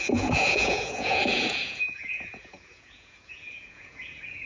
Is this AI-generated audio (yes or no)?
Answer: yes